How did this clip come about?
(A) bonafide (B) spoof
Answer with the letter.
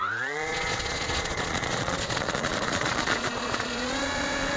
B